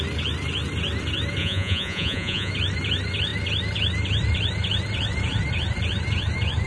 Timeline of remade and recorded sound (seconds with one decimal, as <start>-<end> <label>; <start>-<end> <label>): 0.0-1.4 recorded; 1.4-2.5 remade; 2.5-6.7 recorded